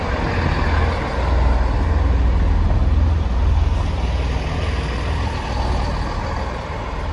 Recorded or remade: recorded